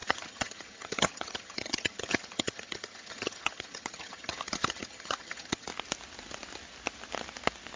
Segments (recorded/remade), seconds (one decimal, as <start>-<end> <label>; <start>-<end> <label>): 0.0-5.7 remade; 5.7-7.8 recorded